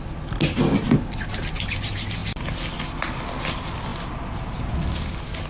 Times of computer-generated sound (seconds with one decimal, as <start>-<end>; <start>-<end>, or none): none